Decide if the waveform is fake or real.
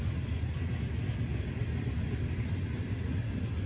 real